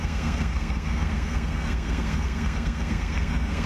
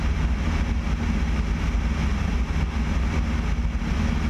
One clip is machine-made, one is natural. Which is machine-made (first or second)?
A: first